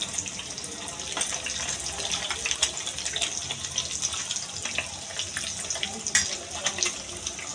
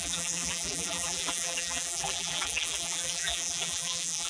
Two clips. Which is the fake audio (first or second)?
second